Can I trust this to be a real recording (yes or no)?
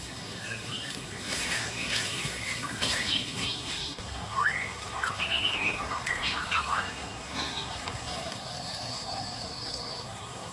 no